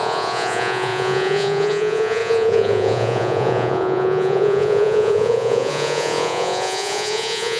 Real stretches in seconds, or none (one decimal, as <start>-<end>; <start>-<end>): none